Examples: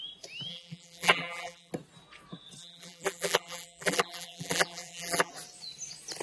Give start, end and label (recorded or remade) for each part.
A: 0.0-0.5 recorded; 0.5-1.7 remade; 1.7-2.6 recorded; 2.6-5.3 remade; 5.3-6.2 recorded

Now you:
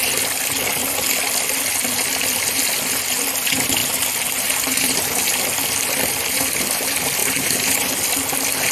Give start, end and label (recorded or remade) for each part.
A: 0.0-3.8 recorded; 3.8-5.0 remade; 5.0-7.2 recorded; 7.2-7.9 remade; 7.9-8.7 recorded

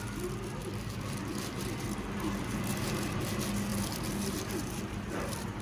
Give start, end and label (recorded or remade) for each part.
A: 0.0-0.6 recorded; 0.6-3.2 remade; 3.2-3.7 recorded; 3.7-5.6 remade

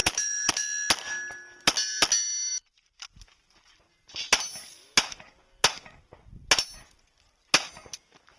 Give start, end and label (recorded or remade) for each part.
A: 0.0-0.5 remade; 0.5-8.4 recorded

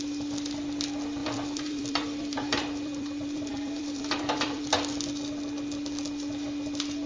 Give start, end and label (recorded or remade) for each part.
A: 0.0-1.2 recorded; 1.2-4.7 remade; 4.7-7.1 recorded

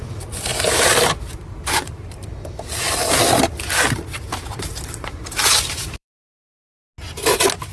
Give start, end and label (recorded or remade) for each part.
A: 0.0-0.5 recorded; 0.5-3.1 remade; 3.1-4.3 recorded; 4.3-6.6 remade; 6.6-7.7 recorded

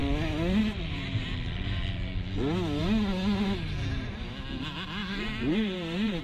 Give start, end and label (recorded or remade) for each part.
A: 0.0-5.0 recorded; 5.0-6.2 remade

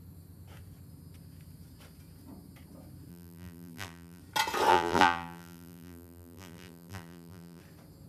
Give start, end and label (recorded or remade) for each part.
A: 0.0-3.1 recorded; 3.1-4.2 remade; 4.2-4.7 recorded; 4.7-7.6 remade; 7.6-8.1 recorded